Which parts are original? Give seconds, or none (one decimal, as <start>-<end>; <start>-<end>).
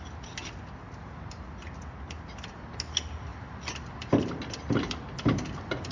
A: 0.0-5.9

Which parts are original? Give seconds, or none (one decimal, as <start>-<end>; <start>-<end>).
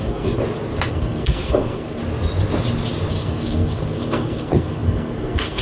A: 0.4-0.9; 2.0-3.1